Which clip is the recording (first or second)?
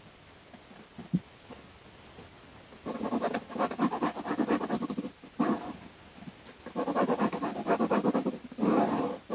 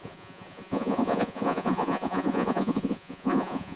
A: first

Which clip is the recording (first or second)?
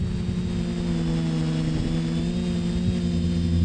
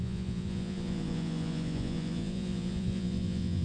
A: first